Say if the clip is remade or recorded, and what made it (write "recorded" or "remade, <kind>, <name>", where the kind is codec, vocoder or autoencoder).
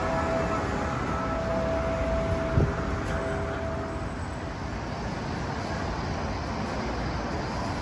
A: recorded